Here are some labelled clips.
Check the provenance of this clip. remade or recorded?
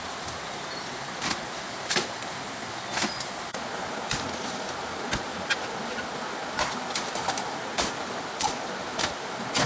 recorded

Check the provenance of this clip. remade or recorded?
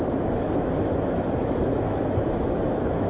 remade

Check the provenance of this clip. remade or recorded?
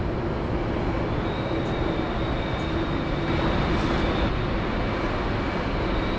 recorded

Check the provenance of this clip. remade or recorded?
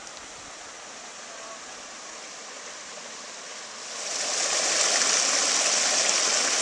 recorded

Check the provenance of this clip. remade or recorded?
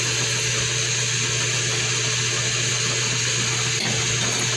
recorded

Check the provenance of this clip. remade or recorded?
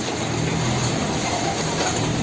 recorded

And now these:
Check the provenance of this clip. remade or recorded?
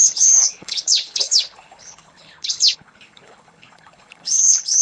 remade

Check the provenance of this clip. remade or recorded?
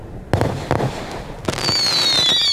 recorded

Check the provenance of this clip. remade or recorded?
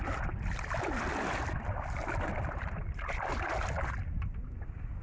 recorded